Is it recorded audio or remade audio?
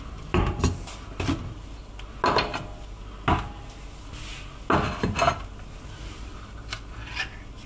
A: recorded